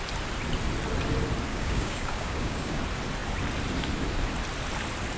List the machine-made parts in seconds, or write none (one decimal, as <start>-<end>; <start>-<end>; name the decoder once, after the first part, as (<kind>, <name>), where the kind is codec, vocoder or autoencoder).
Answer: 1.5-2.8 (codec, DAC)